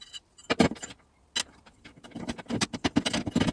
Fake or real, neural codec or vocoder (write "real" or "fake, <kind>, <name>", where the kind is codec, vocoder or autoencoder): real